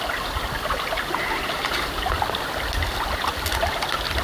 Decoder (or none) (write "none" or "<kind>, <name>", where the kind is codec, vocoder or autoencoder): none